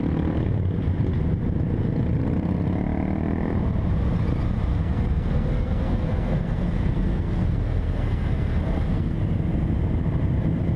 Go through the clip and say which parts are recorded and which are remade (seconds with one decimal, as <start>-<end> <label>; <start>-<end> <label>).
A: 0.0-4.7 recorded; 4.7-9.2 remade; 9.2-10.8 recorded